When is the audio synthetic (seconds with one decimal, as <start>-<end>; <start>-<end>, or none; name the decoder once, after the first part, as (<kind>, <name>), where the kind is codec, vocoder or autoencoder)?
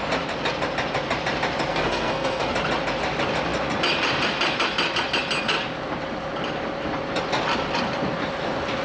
1.7-2.5 (codec, SNAC)